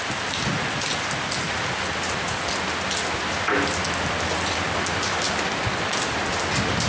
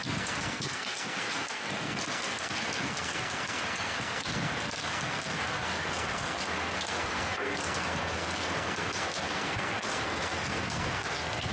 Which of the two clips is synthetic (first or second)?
second